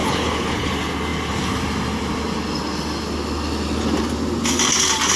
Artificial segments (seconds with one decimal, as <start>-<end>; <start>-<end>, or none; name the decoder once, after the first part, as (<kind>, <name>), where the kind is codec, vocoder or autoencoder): 0.0-0.7 (codec, HILCodec)